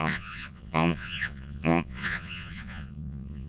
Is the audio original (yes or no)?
no